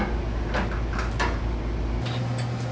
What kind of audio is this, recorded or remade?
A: recorded